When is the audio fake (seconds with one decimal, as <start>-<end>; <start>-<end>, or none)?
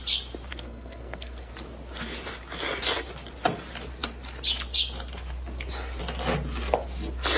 0.5-1.5